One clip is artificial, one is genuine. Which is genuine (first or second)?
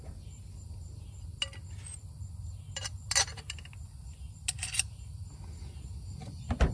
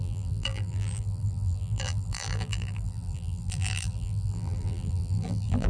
first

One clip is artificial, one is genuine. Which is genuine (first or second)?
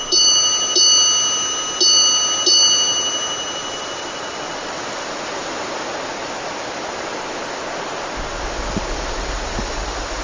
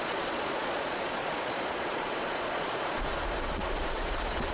first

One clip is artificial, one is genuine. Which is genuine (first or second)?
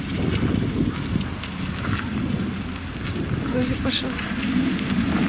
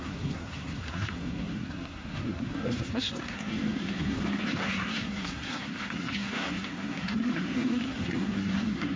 first